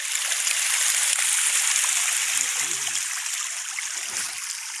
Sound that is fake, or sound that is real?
real